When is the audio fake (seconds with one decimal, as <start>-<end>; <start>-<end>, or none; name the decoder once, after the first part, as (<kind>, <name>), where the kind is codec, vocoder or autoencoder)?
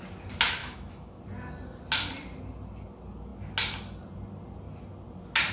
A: 0.6-1.2 (autoencoder, DAC-VAE)